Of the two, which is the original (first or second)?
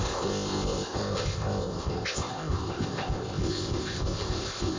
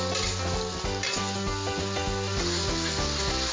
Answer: second